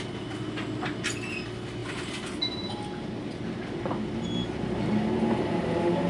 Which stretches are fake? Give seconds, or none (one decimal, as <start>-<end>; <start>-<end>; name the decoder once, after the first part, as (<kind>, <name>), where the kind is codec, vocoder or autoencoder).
none